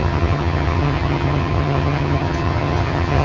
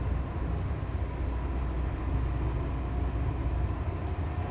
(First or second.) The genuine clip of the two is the second